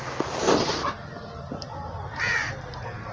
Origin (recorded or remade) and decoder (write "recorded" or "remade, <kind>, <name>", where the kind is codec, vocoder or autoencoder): recorded